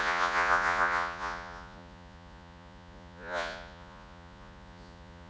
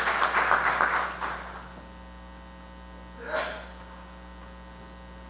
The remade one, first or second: first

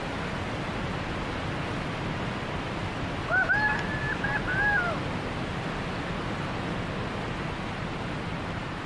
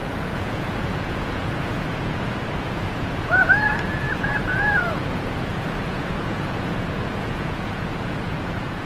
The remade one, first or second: second